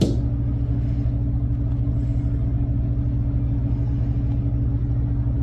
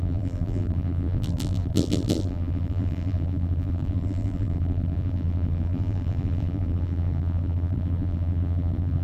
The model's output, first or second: second